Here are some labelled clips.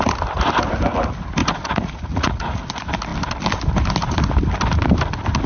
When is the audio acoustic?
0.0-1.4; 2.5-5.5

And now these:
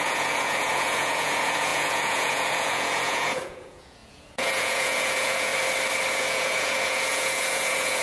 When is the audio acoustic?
5.5-6.1

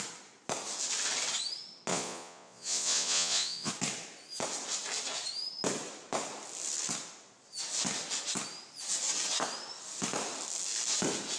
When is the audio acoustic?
0.0-1.9; 3.7-11.4

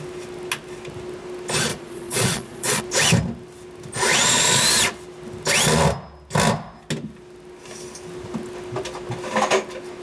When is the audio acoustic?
0.0-1.7; 2.8-4.1; 4.6-10.0

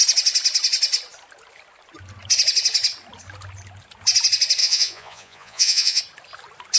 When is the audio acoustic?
0.0-4.6; 6.0-6.8